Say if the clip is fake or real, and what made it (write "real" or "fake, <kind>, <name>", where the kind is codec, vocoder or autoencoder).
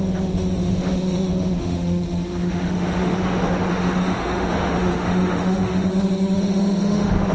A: fake, autoencoder, DAC-VAE